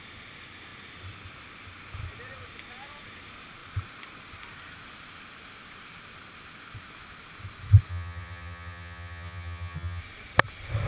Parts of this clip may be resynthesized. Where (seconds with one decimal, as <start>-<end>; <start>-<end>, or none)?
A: 7.9-10.0